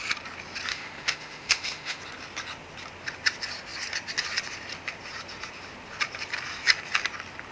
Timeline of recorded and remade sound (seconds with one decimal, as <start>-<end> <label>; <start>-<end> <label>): 0.0-0.7 recorded; 0.7-2.0 remade; 2.0-7.5 recorded